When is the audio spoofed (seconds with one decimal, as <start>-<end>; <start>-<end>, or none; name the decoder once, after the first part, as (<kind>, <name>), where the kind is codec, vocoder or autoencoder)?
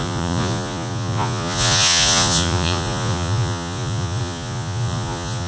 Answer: 0.0-5.5 (vocoder, Vocos)